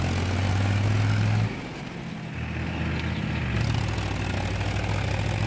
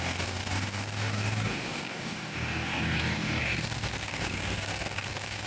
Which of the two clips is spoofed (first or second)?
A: second